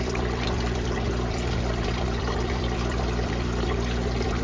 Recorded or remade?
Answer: remade